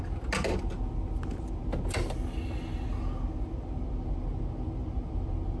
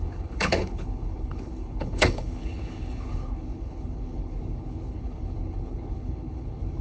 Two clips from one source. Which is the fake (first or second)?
second